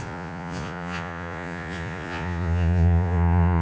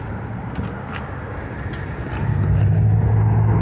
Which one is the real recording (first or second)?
second